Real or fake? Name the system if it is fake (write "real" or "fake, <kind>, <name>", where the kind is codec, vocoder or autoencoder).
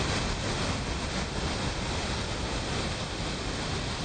real